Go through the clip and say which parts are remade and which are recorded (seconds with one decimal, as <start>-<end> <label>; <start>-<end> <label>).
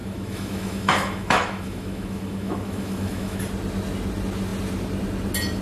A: 0.0-3.4 remade; 3.4-5.6 recorded